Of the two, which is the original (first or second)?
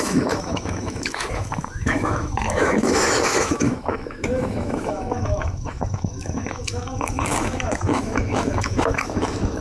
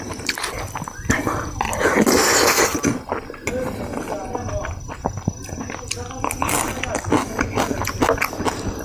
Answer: second